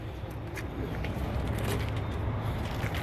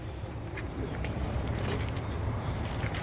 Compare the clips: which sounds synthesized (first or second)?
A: second